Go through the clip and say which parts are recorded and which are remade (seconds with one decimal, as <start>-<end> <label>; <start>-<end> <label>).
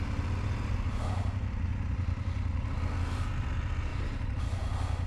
0.0-3.9 recorded; 3.9-4.4 remade; 4.4-5.1 recorded